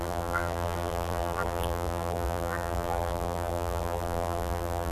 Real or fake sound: fake